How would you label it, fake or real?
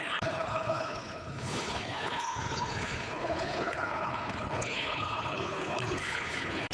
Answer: fake